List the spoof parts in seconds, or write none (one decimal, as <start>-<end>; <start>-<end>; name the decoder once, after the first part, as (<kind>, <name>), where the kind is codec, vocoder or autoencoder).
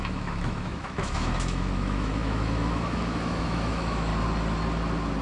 0.0-4.1 (autoencoder, DAC-VAE)